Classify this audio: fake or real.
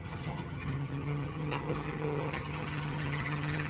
fake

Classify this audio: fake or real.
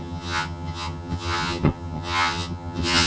fake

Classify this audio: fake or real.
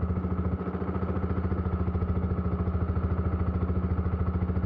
real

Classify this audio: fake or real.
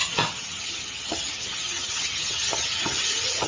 fake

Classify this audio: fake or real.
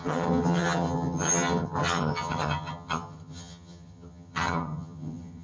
fake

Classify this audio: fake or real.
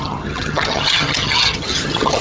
fake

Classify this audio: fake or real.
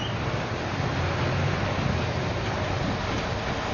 real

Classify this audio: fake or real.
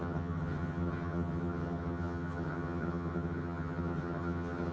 fake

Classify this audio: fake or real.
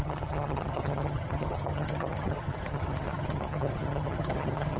fake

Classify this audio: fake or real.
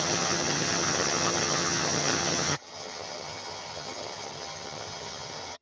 fake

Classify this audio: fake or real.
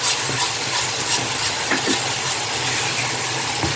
real